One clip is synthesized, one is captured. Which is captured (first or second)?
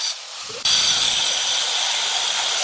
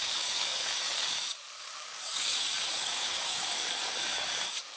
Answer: first